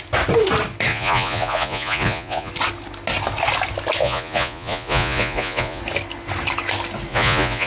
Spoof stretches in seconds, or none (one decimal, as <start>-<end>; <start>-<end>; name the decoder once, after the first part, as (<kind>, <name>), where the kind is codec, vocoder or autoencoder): 0.9-2.5 (vocoder, Vocos); 4.0-5.8; 7.1-7.7